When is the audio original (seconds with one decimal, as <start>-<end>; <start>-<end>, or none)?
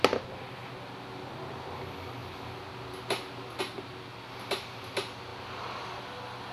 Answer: 0.0-6.5